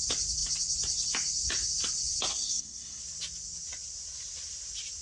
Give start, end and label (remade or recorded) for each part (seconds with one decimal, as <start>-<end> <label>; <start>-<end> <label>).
0.0-2.3 recorded; 2.3-3.0 remade; 3.0-5.0 recorded